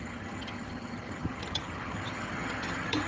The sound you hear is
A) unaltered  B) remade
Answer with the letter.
B